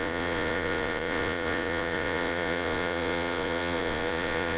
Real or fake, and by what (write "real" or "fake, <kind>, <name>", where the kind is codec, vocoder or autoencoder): fake, vocoder, Vocos